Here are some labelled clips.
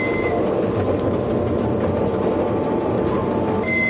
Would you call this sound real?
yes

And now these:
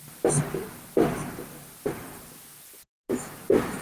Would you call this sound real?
yes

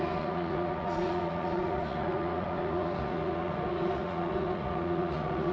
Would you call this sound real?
no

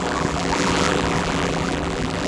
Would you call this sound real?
no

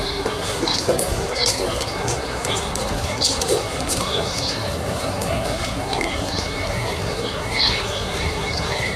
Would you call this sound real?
no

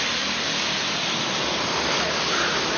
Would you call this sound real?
yes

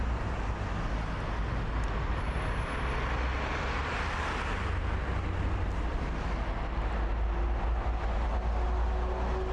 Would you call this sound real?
yes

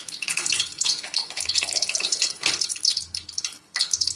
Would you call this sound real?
no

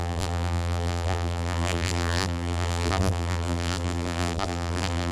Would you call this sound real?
no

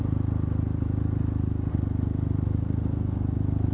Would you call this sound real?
yes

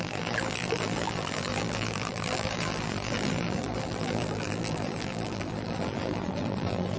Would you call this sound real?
no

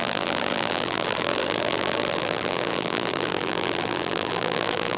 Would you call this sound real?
no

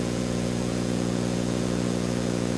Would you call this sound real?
no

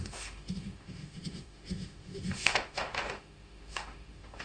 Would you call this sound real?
no